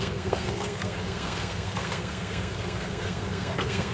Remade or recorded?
remade